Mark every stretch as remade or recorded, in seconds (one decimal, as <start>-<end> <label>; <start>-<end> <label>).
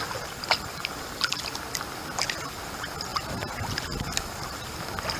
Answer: 0.0-5.2 recorded